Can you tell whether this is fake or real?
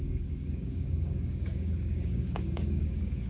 fake